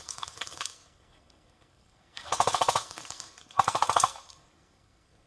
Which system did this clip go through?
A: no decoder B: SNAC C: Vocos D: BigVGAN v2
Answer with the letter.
B